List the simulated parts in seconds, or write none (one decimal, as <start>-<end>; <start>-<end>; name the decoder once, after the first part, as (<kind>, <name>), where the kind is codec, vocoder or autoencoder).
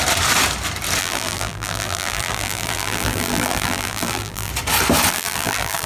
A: 1.0-4.5 (vocoder, BigVGAN v2); 5.1-5.9